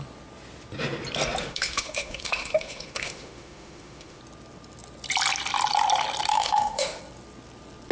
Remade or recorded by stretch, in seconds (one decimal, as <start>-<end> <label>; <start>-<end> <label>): 0.0-1.4 recorded; 1.4-4.2 remade; 4.2-6.3 recorded; 6.3-7.0 remade; 7.0-7.9 recorded